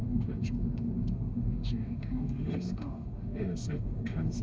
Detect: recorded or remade remade